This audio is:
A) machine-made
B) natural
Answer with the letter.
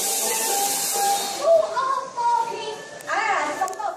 B